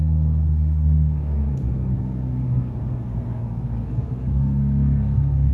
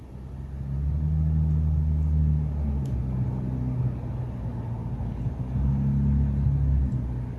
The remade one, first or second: first